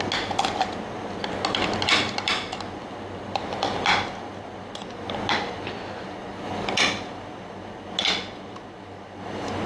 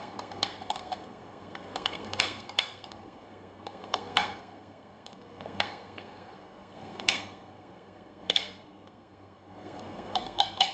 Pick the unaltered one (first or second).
first